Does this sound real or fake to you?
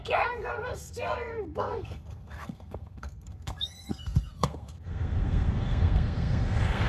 fake